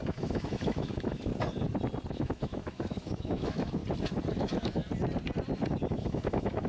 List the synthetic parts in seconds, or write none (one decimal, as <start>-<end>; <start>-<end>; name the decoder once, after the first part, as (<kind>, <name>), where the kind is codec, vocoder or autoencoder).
0.0-1.3 (autoencoder, DAC-VAE); 2.1-3.8; 4.3-4.8; 5.9-6.7